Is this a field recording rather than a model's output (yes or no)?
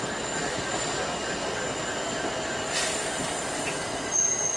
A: yes